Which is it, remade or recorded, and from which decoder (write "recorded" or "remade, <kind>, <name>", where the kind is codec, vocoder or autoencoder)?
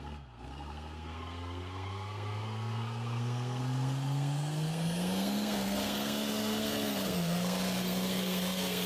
remade, codec, SNAC